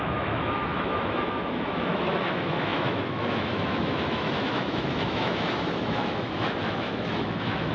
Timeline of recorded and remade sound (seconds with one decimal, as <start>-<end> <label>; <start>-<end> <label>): 0.0-7.7 remade